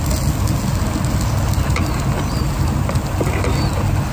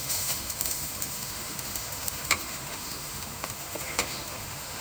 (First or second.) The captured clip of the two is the first